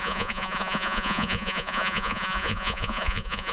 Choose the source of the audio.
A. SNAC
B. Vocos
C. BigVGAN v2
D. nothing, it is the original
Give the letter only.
B